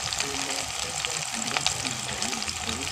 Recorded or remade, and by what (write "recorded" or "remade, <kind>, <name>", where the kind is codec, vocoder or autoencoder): remade, vocoder, BigVGAN v2